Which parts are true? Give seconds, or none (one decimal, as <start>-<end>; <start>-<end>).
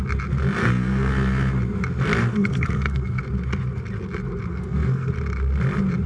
0.0-0.6; 1.1-2.3; 3.2-4.5; 5.1-6.1